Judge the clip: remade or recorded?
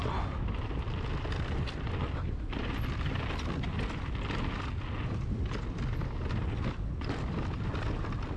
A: recorded